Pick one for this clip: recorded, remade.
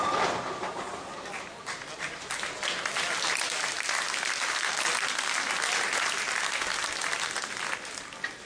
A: recorded